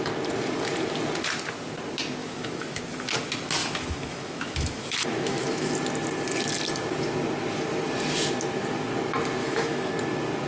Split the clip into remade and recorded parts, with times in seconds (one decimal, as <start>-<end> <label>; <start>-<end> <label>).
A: 0.0-2.2 recorded; 2.2-2.8 remade; 2.8-3.6 recorded; 3.6-5.7 remade; 5.7-9.4 recorded; 9.4-9.9 remade; 9.9-10.5 recorded